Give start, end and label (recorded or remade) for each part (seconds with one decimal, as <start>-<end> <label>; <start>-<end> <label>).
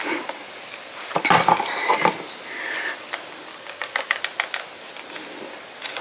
0.0-3.5 recorded; 3.5-4.2 remade; 4.2-6.0 recorded